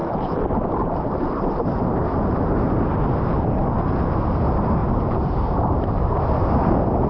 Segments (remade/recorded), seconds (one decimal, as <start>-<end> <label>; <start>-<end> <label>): 0.0-2.1 remade; 2.1-2.9 recorded; 2.9-3.6 remade; 3.6-4.8 recorded; 4.8-6.2 remade; 6.2-7.1 recorded